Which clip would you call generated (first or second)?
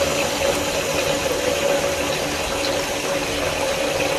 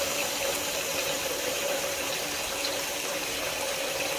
second